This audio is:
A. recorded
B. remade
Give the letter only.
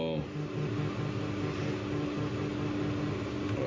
A